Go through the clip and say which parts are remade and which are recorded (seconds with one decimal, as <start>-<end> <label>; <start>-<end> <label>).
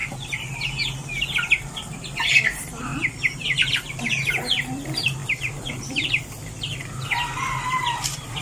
0.0-2.4 recorded; 2.4-2.9 remade; 2.9-3.8 recorded; 3.8-8.4 remade